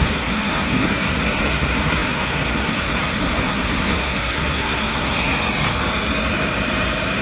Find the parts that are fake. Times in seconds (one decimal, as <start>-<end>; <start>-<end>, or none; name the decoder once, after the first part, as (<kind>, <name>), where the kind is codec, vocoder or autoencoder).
0.0-5.3 (codec, SNAC)